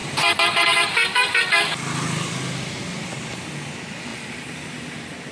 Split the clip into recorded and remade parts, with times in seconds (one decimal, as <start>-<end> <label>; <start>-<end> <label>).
0.0-1.4 remade; 1.4-4.1 recorded; 4.1-4.7 remade; 4.7-5.3 recorded